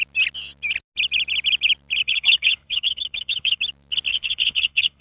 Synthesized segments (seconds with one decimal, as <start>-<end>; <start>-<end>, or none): 2.0-3.6; 4.1-5.0